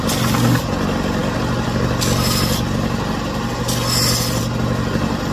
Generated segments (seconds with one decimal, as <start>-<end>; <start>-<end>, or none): none